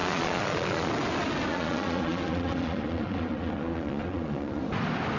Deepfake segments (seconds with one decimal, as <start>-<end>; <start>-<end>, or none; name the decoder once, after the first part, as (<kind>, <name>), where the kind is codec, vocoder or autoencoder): 0.0-0.9 (vocoder, Vocos); 1.5-4.6